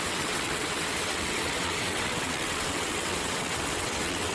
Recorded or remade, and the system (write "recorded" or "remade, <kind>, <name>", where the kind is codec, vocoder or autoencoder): remade, vocoder, WaveNeXt